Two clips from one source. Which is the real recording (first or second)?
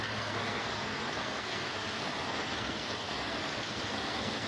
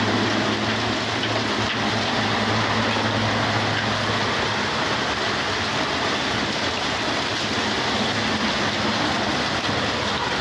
second